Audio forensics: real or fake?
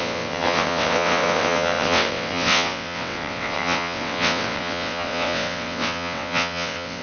fake